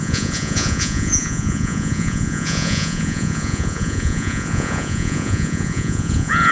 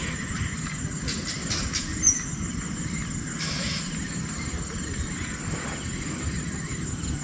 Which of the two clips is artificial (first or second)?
first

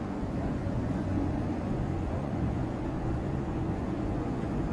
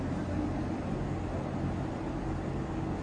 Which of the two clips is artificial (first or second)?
first